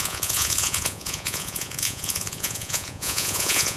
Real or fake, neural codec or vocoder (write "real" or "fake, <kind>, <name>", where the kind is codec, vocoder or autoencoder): fake, vocoder, Vocos